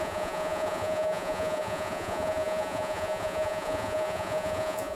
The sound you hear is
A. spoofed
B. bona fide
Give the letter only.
A